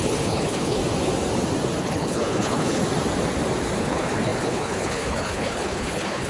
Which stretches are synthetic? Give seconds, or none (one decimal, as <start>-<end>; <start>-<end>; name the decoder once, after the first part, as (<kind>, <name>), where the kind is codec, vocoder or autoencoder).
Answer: 0.0-0.8 (codec, HILCodec); 1.8-2.8; 3.8-6.3